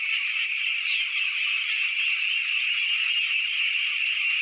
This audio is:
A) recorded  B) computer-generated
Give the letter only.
B